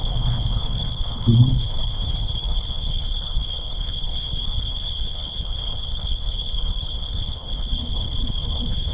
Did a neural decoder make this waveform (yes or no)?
yes